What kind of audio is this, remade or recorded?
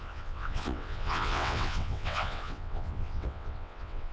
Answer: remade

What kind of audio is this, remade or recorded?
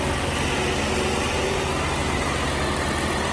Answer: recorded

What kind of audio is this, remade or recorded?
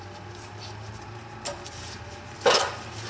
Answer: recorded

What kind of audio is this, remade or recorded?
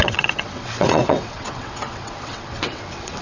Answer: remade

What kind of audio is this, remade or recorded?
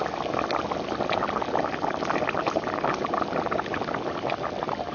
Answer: recorded